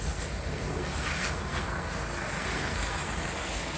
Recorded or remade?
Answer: remade